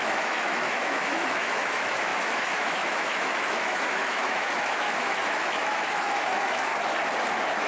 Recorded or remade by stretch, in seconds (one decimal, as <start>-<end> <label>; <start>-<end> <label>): 0.0-6.7 remade; 6.7-7.3 recorded; 7.3-7.7 remade